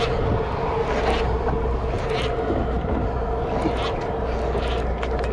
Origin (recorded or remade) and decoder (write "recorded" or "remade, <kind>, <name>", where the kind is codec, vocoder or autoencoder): recorded